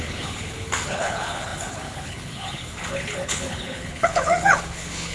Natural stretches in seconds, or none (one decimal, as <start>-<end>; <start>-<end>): none